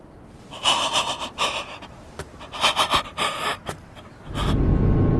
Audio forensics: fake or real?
real